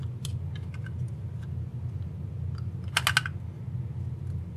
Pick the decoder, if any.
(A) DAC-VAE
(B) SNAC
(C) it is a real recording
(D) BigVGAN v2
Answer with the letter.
C